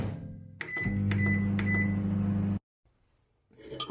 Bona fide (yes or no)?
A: yes